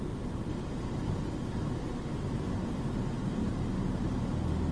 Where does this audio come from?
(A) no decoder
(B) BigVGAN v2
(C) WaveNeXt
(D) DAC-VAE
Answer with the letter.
A